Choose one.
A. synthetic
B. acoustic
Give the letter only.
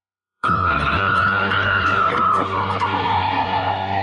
A